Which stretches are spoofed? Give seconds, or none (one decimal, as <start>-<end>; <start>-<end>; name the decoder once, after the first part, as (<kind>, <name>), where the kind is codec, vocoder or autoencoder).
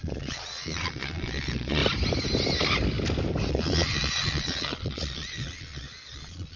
0.0-1.8 (vocoder, Vocos); 3.5-6.6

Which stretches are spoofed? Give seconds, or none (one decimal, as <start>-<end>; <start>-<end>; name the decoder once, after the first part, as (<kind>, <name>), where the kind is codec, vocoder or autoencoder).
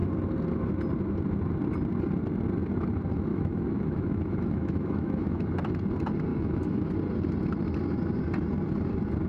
3.3-5.4 (autoencoder, DAC-VAE); 6.3-6.9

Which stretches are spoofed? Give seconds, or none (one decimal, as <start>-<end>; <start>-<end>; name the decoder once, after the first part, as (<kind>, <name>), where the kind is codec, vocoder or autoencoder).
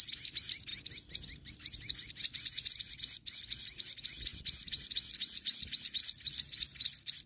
none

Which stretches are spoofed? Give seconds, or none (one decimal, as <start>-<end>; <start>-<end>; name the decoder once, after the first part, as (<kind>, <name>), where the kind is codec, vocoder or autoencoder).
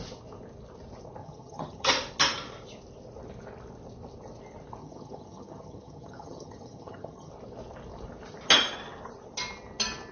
1.2-1.9 (vocoder, HiFi-GAN); 4.8-7.3